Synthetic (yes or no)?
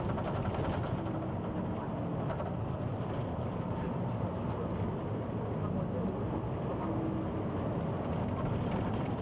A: no